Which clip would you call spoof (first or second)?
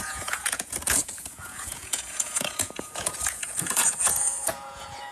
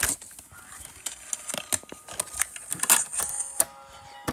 first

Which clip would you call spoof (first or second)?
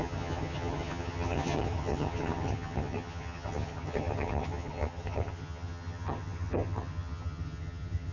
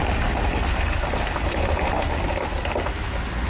first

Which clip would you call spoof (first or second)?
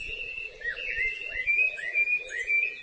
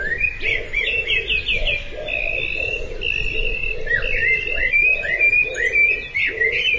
first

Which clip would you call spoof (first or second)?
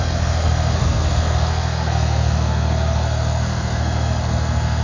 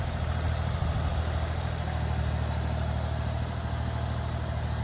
first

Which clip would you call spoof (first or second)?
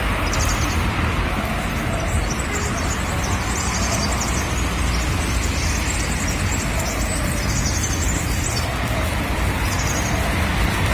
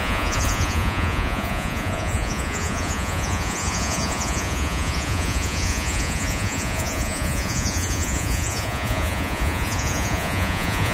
second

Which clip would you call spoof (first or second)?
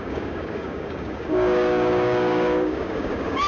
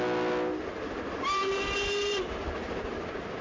first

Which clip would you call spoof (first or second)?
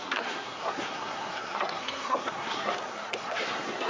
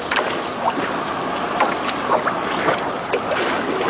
first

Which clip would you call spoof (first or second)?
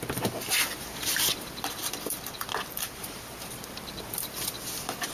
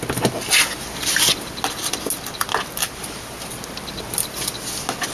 first